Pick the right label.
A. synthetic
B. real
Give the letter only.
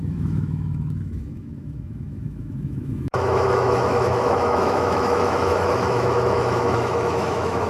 A